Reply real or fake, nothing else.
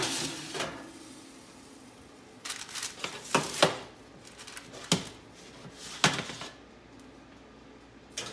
real